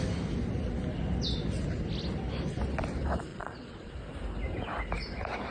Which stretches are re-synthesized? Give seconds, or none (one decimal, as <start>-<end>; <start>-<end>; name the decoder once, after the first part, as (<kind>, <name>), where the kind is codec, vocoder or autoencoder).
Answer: 3.3-3.9 (vocoder, Vocos)